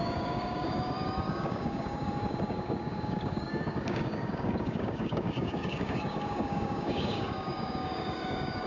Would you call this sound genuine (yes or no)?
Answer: no